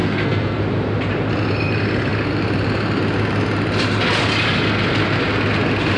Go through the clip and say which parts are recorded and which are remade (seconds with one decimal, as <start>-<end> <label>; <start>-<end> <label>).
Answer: 0.0-0.6 remade; 0.6-6.0 recorded